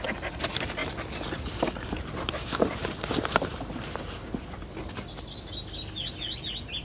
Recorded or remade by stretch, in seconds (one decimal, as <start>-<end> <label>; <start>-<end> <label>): 0.0-0.8 recorded; 0.8-4.9 remade; 4.9-6.8 recorded